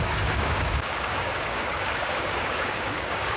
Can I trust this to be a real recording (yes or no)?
no